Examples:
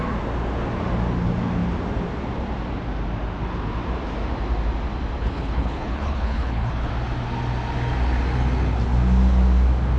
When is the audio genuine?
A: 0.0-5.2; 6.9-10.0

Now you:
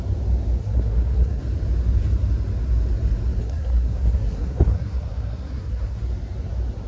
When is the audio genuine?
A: 0.0-0.6; 1.4-3.4; 6.0-6.9

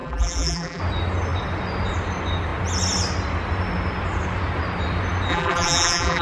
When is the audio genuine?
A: 0.8-5.3

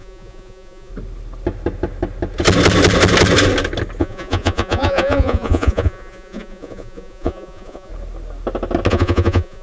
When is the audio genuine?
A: 0.9-4.0; 7.9-8.9

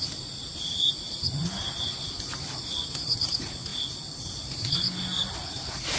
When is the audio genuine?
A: 0.0-6.0

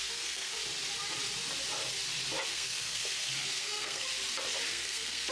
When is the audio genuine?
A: 0.5-2.5; 4.1-4.7